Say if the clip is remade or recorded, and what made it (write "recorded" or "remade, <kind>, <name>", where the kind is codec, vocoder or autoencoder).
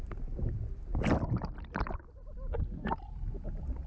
recorded